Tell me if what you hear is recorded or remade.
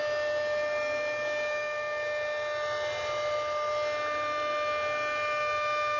recorded